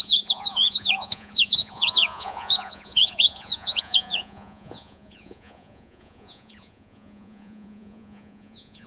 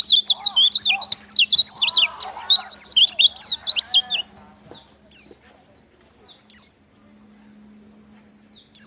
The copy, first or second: first